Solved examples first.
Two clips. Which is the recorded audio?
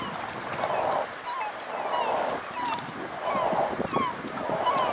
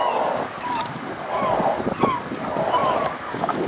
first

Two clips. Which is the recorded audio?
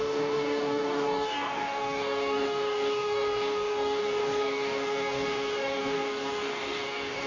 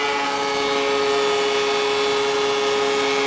second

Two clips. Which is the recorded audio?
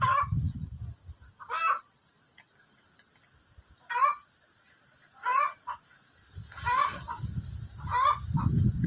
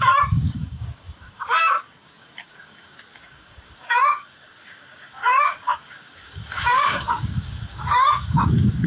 first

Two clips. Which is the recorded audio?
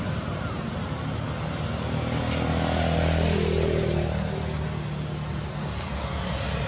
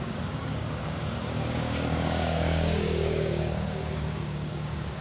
first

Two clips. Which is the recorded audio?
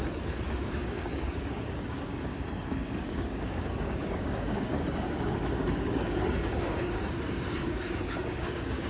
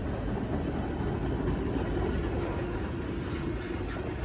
second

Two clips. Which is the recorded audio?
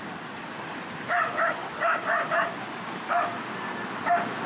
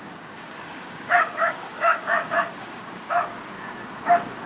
first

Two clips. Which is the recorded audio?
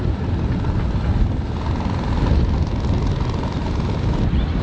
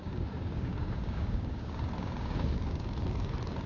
first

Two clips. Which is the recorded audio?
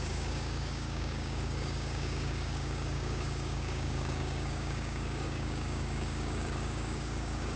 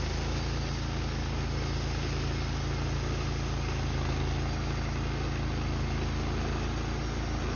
second